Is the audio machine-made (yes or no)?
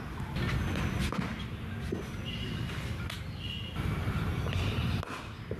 no